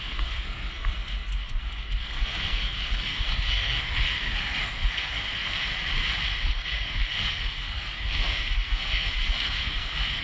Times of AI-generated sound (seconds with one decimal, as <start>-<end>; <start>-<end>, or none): 0.0-5.7; 6.5-10.2